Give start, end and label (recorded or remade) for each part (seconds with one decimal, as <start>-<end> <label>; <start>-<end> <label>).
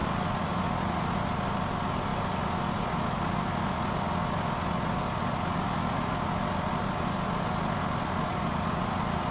0.0-9.3 recorded